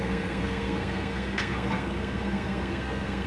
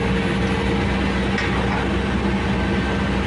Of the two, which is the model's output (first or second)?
first